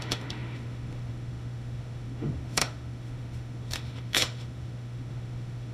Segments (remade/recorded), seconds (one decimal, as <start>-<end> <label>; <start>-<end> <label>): 0.0-5.7 remade